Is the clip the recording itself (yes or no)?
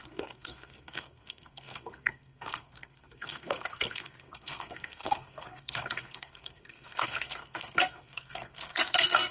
no